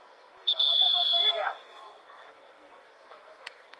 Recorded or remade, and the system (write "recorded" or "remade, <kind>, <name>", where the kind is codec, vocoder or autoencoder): remade, codec, SNAC